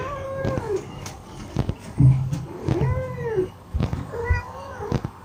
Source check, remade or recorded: remade